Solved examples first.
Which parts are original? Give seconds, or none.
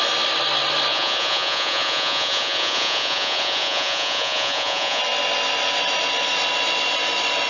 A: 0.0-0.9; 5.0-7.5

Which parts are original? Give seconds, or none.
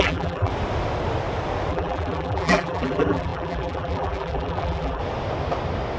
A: 0.5-1.7; 5.0-6.0